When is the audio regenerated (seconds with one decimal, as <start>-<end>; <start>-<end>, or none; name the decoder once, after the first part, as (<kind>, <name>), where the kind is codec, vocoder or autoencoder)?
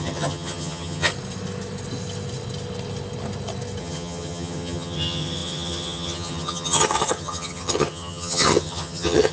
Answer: 0.0-1.1 (vocoder, HiFi-GAN); 3.8-9.3